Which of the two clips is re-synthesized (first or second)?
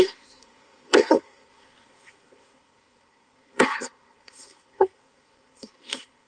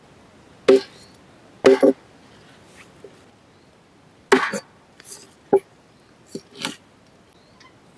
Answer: first